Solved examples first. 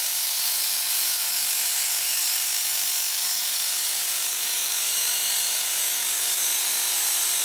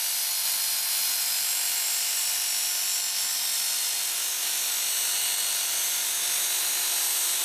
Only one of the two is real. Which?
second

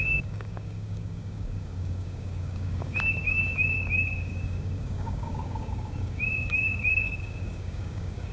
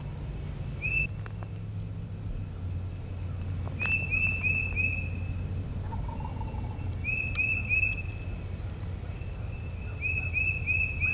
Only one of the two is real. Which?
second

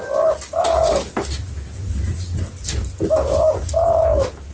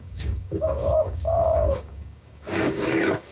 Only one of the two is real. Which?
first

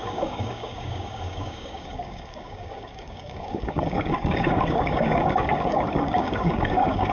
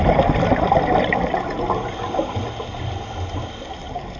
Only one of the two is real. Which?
second